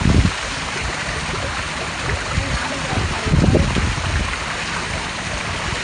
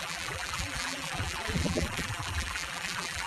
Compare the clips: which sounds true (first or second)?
first